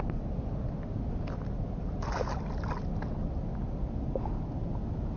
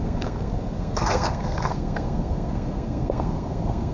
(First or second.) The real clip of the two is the first